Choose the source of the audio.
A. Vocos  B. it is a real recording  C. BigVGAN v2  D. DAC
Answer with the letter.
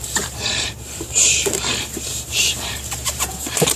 C